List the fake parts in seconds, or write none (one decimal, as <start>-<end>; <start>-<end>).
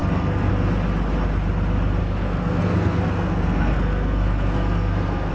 0.0-0.5; 2.0-5.3